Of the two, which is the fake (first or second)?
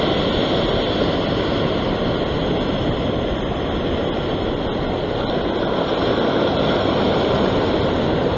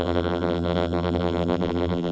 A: second